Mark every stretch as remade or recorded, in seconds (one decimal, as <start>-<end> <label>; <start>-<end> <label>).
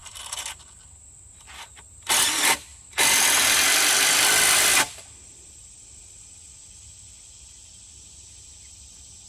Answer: 0.0-2.7 recorded; 2.7-6.9 remade; 6.9-9.3 recorded